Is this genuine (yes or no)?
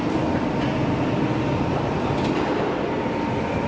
yes